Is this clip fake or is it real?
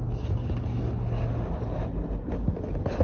real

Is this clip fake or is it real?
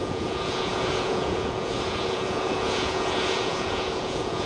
fake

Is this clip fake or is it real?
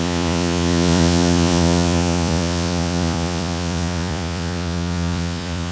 fake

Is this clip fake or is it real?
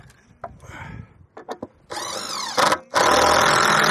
real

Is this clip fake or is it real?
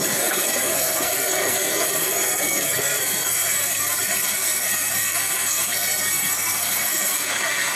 fake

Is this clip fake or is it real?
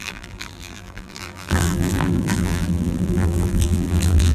fake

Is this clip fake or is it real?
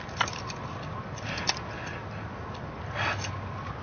real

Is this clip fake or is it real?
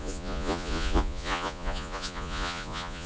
fake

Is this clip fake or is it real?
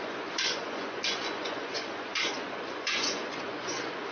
fake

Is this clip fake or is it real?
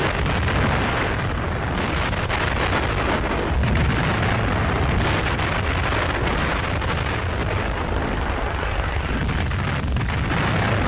real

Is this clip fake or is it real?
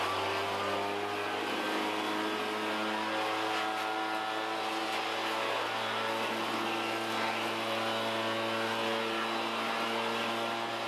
real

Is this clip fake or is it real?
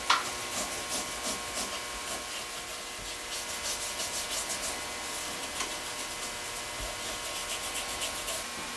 real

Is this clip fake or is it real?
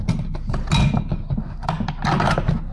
real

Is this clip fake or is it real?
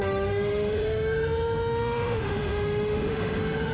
fake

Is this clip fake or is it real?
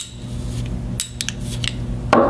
real